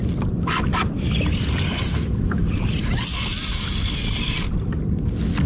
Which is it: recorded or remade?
recorded